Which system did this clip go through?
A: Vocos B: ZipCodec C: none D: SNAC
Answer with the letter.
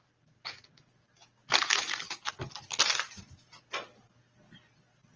C